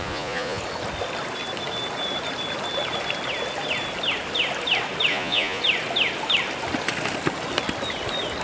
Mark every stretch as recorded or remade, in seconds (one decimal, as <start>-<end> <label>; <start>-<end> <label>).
0.0-0.6 remade; 0.6-5.1 recorded; 5.1-5.6 remade; 5.6-8.4 recorded